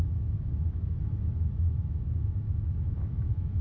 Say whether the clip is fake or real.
fake